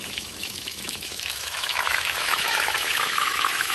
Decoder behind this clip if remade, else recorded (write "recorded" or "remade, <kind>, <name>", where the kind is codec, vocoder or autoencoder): remade, autoencoder, DAC-VAE